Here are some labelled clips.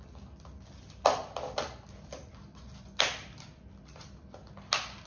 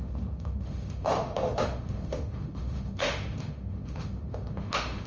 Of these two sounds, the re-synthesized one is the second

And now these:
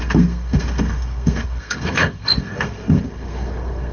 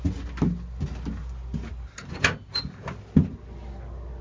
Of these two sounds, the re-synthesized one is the first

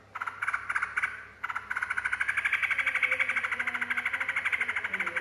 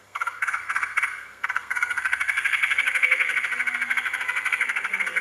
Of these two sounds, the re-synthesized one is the second